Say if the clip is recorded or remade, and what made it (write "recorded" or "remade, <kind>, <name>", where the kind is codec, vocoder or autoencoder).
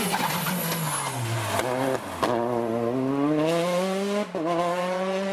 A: recorded